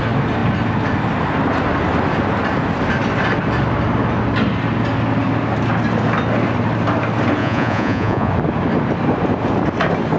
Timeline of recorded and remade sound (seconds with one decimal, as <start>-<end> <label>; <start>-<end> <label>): 0.0-7.4 recorded; 7.4-8.3 remade; 8.3-10.2 recorded